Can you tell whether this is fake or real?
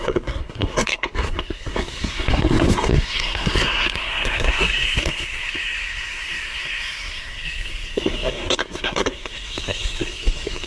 fake